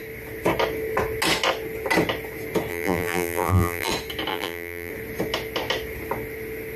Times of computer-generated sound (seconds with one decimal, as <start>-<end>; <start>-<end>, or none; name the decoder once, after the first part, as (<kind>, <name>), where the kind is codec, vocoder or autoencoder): 2.7-3.9 (vocoder, BigVGAN v2); 4.3-4.9